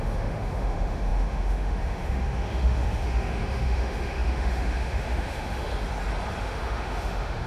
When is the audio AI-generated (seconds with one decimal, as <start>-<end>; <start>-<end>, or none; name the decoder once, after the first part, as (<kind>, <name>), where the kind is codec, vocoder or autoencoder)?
0.0-5.7 (autoencoder, DAC-VAE); 6.4-7.5